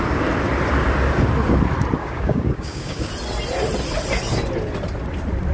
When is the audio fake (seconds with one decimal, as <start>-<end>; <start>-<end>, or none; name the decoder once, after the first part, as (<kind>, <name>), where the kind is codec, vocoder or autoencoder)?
2.0-3.1 (codec, DAC)